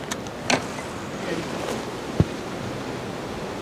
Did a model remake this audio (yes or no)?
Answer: no